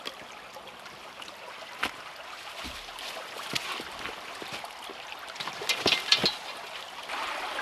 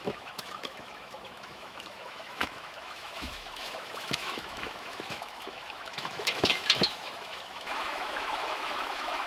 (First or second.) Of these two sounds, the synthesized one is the second